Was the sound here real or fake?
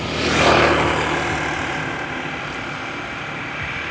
real